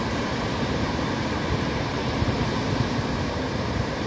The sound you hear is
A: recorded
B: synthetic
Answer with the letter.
B